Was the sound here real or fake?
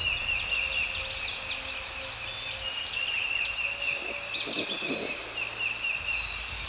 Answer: real